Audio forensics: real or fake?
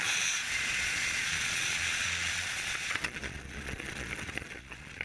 fake